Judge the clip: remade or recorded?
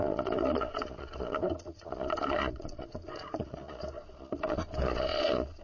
remade